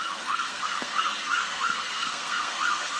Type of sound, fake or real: fake